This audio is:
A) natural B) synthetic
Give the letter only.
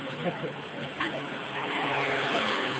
B